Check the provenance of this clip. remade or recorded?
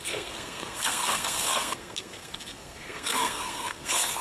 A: remade